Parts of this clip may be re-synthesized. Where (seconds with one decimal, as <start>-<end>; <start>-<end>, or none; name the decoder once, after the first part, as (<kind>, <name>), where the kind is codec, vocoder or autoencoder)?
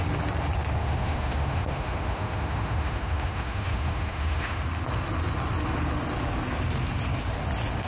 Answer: 0.8-4.6 (autoencoder, DAC-VAE)